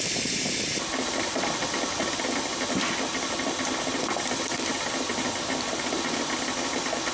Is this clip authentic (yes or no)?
yes